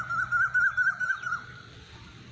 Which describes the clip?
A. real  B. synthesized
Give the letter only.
A